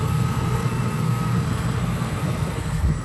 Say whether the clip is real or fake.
fake